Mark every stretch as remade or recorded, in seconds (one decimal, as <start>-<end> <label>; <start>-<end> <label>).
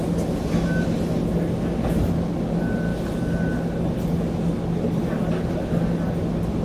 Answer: 0.0-6.6 recorded